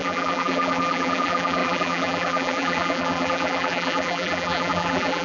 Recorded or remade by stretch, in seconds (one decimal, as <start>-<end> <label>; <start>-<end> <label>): 0.0-5.2 remade